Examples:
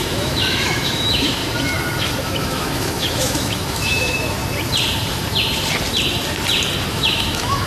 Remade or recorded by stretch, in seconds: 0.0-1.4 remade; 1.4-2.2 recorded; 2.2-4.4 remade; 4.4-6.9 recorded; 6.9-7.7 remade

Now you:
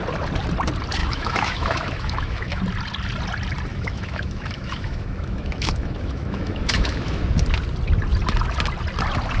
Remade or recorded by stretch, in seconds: 0.0-1.0 recorded; 1.0-2.6 remade; 2.6-3.7 recorded; 3.7-7.2 remade; 7.2-9.4 recorded